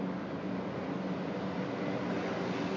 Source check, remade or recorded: recorded